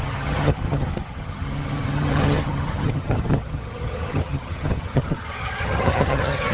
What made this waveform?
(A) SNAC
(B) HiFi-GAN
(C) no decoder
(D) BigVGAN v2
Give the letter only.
B